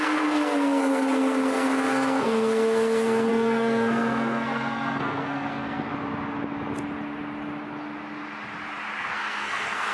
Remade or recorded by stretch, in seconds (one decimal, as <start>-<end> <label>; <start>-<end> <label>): 0.0-5.9 remade; 5.9-9.0 recorded; 9.0-9.9 remade